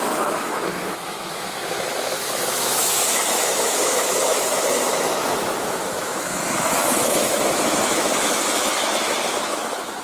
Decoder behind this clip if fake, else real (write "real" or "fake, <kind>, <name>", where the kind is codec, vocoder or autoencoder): fake, autoencoder, DAC-VAE